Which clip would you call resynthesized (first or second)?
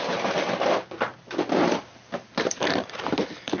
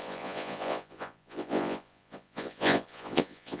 second